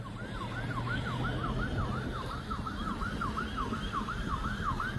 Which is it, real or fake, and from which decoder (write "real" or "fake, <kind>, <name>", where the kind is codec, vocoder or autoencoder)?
real